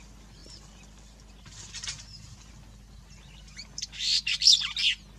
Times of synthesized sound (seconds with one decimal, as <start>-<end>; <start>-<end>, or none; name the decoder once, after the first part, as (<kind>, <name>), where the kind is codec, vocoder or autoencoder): 0.4-2.5 (vocoder, BigVGAN v2)